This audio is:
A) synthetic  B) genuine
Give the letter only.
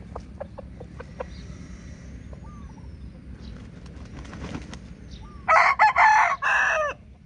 B